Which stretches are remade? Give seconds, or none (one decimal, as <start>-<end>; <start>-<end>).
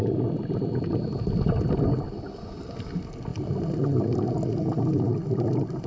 none